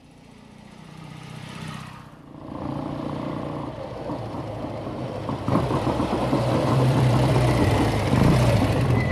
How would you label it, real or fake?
fake